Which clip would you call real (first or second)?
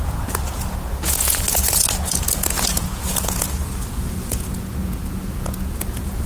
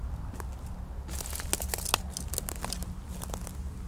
second